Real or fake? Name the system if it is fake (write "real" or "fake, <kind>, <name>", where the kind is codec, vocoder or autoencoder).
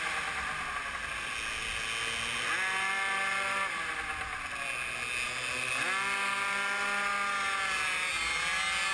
real